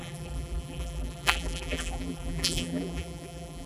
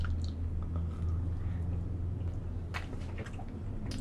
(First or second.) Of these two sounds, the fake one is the first